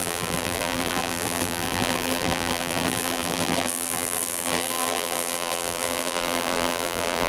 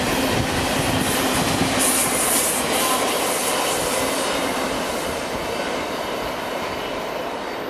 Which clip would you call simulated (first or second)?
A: first